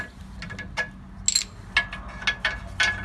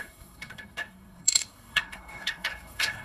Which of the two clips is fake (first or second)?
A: second